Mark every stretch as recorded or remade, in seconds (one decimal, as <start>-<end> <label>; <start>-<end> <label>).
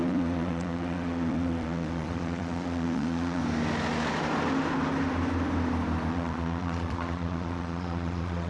0.0-3.4 remade; 3.4-6.1 recorded; 6.1-8.5 remade